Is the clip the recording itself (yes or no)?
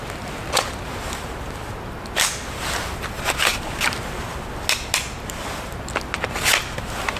yes